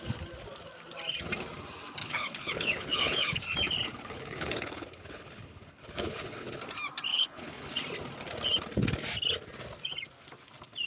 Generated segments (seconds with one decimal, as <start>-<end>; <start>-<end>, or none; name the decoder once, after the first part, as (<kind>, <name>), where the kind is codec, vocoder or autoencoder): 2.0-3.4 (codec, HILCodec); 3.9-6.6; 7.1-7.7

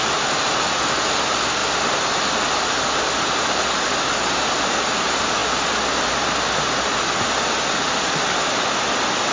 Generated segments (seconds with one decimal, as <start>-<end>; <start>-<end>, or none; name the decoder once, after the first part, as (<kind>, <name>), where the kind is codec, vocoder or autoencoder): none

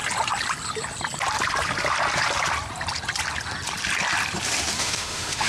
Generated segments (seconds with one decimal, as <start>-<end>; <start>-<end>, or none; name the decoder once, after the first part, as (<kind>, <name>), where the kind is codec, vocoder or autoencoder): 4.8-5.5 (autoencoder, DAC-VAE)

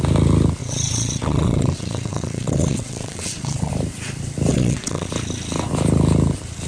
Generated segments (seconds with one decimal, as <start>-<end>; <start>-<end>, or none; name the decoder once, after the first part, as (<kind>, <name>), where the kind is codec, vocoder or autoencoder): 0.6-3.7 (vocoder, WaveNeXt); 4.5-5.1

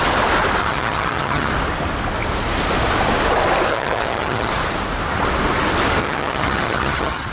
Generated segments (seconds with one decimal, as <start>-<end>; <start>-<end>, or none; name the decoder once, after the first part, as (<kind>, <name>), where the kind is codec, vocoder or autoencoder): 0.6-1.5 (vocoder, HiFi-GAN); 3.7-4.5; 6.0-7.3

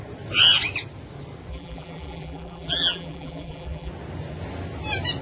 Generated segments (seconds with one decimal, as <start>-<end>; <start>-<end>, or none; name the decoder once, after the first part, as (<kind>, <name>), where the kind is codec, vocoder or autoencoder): 1.5-3.9 (vocoder, BigVGAN v2)

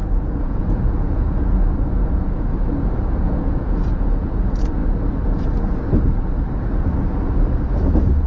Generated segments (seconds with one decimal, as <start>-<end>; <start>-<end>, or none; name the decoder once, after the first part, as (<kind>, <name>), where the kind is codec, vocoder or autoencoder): 0.0-4.8 (vocoder, Vocos); 7.7-8.3

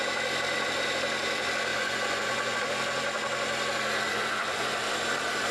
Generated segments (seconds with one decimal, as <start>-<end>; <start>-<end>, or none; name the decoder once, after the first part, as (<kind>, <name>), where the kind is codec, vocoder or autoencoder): 1.7-2.6 (vocoder, Vocos); 4.1-4.9